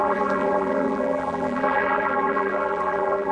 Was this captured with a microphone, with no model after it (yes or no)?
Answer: no